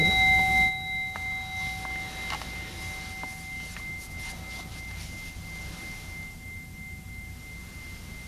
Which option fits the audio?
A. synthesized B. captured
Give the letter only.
B